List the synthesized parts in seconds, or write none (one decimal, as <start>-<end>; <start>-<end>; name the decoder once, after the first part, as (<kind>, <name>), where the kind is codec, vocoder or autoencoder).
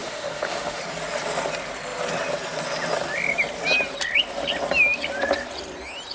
0.0-0.8 (autoencoder, DAC-VAE)